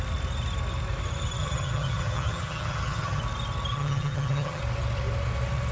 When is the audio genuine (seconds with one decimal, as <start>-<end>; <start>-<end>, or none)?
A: 0.0-1.4; 3.2-3.7; 4.6-5.7